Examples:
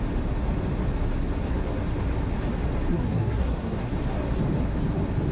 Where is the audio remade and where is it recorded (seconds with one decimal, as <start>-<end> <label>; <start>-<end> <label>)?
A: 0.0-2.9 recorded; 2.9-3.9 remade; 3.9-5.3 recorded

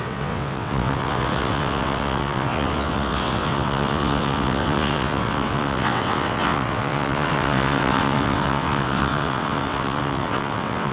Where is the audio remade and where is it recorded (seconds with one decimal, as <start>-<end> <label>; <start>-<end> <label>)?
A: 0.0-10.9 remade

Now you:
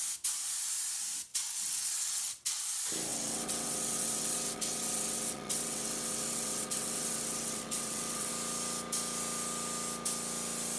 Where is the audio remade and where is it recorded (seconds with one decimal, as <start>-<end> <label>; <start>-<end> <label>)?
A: 0.0-1.3 recorded; 1.3-2.7 remade; 2.7-3.1 recorded; 3.1-8.3 remade; 8.3-10.8 recorded

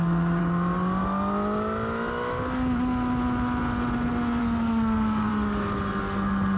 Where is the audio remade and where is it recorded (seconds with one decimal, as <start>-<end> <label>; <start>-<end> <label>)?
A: 0.0-0.4 remade; 0.4-4.4 recorded; 4.4-5.3 remade; 5.3-6.0 recorded; 6.0-6.6 remade

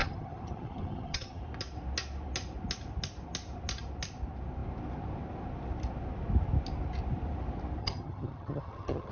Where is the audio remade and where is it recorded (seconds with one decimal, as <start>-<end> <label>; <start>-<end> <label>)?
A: 0.0-1.4 remade; 1.4-7.8 recorded; 7.8-9.1 remade

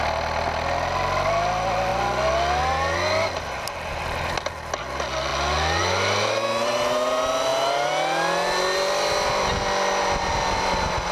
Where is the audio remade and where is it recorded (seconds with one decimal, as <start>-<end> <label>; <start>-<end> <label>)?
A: 0.0-11.1 recorded

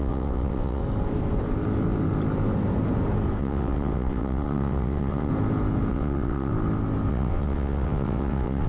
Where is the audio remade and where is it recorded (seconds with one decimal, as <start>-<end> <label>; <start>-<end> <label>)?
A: 0.0-0.8 remade; 0.8-3.4 recorded; 3.4-5.3 remade; 5.3-5.9 recorded; 5.9-6.5 remade; 6.5-7.1 recorded; 7.1-8.7 remade

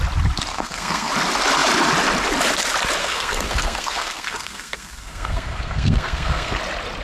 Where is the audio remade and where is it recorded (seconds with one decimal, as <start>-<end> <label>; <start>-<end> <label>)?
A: 0.0-0.5 recorded; 0.5-1.1 remade; 1.1-3.0 recorded; 3.0-6.6 remade; 6.6-7.0 recorded